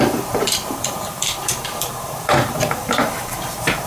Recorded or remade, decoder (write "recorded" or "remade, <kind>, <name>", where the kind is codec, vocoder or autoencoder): remade, vocoder, BigVGAN v2